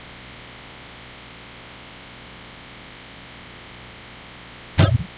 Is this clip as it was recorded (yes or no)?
yes